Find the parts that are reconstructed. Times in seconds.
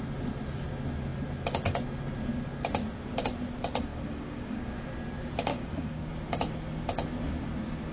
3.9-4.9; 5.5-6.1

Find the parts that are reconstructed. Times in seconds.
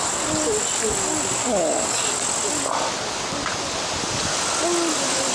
1.4-2.0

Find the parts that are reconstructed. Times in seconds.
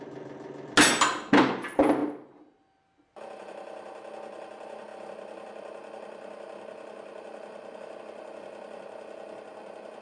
none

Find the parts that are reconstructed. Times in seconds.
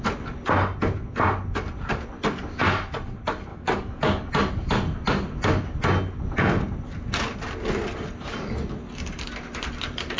3.5-4.3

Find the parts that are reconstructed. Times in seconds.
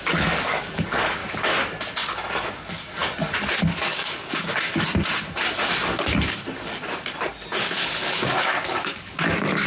0.0-1.2; 2.5-3.0; 3.6-4.7; 7.6-9.7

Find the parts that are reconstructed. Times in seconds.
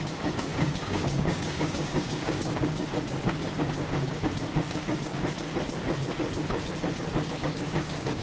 0.0-5.1; 7.3-8.2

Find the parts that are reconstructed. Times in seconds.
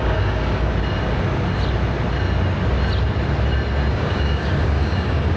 0.0-0.7; 3.9-5.4